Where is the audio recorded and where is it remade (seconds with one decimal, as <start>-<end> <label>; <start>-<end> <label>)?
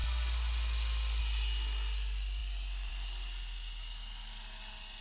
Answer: 0.0-5.0 recorded